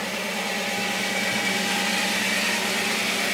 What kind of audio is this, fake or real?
real